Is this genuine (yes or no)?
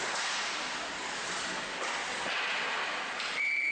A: yes